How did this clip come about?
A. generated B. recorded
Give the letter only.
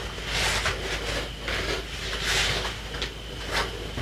B